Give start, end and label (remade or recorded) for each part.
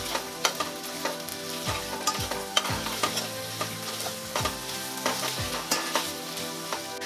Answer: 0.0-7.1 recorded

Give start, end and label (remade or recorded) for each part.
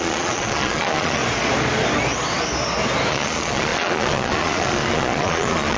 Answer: 0.0-1.2 remade; 1.2-3.1 recorded; 3.1-5.8 remade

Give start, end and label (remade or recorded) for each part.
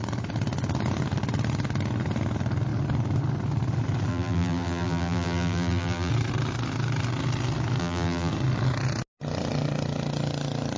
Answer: 0.0-4.1 recorded; 4.1-6.1 remade; 6.1-7.8 recorded; 7.8-8.3 remade; 8.3-10.8 recorded